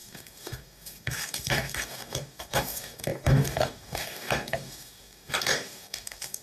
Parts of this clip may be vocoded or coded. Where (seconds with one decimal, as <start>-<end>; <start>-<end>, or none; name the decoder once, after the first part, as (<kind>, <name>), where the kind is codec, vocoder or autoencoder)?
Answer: 0.0-6.4 (codec, DAC)